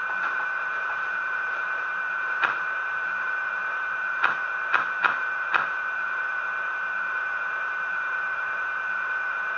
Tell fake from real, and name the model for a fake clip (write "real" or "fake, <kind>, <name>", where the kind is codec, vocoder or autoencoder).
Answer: fake, vocoder, BigVGAN v2